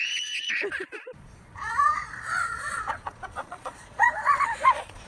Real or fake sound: fake